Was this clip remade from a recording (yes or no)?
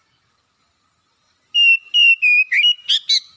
no